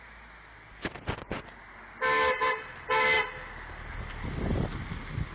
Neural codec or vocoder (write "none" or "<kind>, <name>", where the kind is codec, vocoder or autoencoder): none